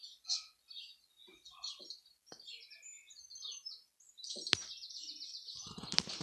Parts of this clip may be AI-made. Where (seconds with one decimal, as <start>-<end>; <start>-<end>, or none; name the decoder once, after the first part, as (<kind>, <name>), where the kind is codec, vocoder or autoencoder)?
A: none